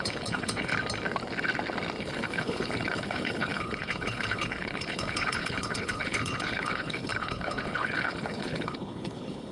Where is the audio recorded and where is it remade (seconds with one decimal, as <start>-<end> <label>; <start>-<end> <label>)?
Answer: 0.0-0.7 remade; 0.7-2.0 recorded; 2.0-9.5 remade